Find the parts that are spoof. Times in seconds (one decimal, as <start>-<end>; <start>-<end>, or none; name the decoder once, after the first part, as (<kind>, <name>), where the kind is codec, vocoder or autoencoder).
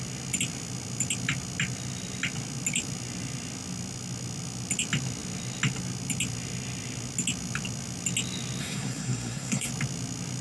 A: 8.6-9.7 (codec, SNAC)